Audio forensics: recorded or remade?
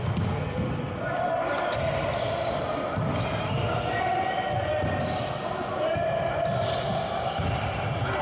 recorded